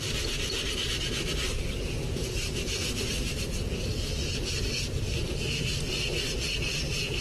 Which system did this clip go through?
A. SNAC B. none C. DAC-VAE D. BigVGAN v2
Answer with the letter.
D